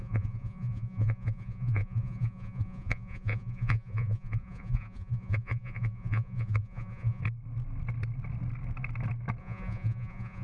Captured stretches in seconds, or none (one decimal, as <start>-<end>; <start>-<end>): 7.2-9.4